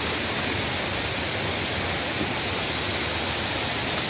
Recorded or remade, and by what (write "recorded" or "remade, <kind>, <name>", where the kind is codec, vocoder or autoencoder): recorded